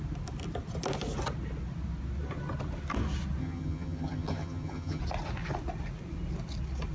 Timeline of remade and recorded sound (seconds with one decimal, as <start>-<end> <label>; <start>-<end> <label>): 0.0-3.4 recorded; 3.4-5.0 remade; 5.0-6.9 recorded